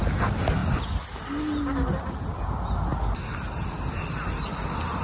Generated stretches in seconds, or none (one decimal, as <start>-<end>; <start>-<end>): none